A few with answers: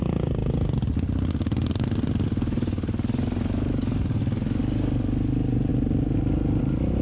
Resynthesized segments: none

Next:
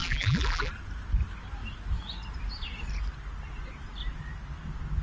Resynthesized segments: 0.0-0.7 (vocoder, BigVGAN v2)

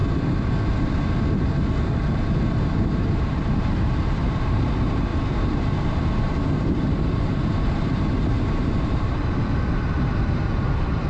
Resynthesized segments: 2.6-5.1 (vocoder, BigVGAN v2); 5.8-11.1